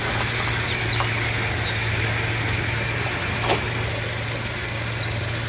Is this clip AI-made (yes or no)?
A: no